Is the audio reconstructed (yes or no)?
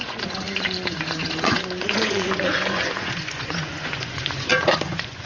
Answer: yes